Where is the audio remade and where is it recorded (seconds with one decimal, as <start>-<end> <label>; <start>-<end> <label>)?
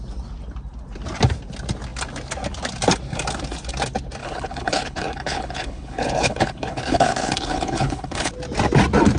0.0-4.2 recorded; 4.2-8.3 remade; 8.3-9.2 recorded